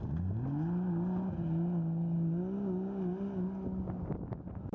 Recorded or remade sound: recorded